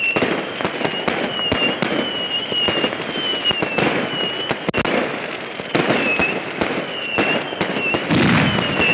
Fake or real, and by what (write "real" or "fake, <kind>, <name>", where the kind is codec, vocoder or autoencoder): real